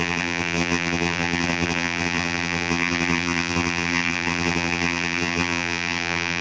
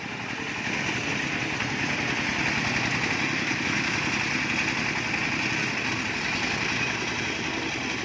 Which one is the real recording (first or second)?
second